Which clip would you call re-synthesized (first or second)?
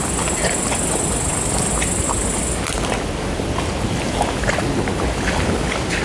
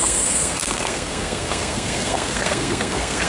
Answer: second